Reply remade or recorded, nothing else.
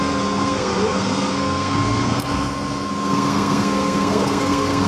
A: remade